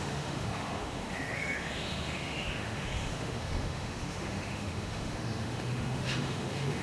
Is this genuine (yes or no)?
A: no